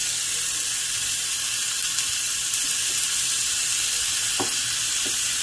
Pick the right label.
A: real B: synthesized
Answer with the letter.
A